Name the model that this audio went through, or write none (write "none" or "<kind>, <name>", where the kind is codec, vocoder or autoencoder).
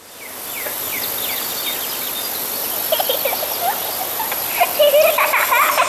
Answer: none